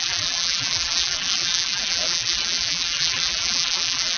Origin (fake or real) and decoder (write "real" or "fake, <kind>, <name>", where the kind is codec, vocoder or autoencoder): fake, vocoder, BigVGAN v2